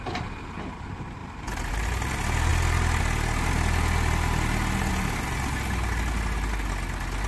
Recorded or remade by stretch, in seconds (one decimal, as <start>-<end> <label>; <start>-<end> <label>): 0.0-7.3 recorded